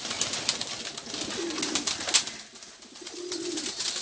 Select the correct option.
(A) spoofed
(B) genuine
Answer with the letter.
B